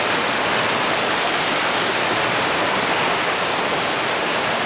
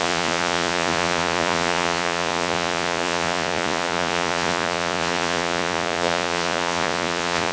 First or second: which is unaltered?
first